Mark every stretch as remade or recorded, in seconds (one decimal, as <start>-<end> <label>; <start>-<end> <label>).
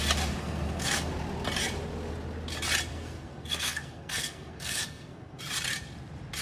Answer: 0.0-0.4 recorded; 0.4-1.1 remade; 1.1-2.9 recorded; 2.9-5.4 remade; 5.4-6.4 recorded